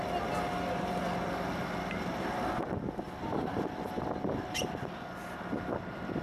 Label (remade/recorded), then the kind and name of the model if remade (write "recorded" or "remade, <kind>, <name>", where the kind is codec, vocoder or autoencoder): recorded